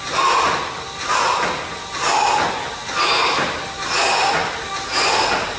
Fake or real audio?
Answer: real